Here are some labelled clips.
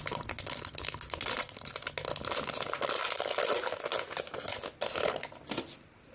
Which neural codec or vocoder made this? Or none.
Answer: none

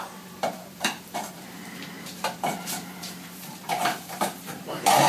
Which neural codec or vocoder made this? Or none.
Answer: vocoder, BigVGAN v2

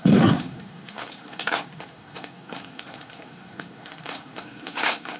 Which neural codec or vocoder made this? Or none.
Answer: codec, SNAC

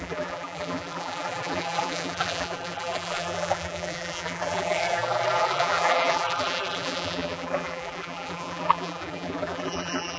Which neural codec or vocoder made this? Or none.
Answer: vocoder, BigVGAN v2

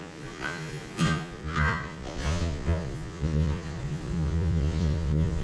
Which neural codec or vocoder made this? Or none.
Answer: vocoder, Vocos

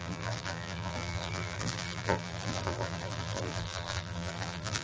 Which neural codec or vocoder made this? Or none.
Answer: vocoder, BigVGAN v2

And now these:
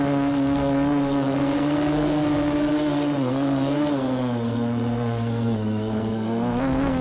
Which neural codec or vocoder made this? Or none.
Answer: codec, SNAC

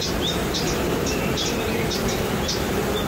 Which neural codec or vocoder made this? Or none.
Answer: none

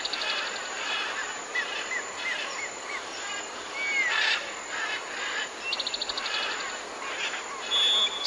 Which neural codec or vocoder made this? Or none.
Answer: none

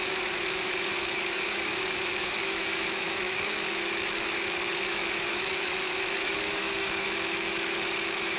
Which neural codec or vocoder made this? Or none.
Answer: autoencoder, DAC-VAE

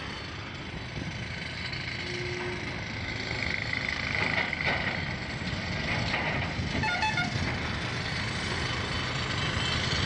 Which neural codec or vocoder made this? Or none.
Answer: none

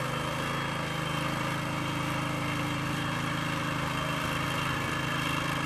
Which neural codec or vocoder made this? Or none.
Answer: none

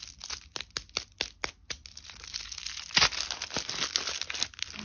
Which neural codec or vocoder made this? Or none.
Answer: none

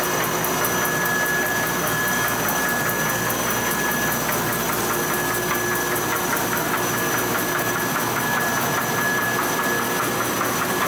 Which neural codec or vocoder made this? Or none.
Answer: none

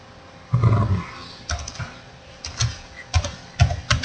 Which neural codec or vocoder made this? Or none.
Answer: none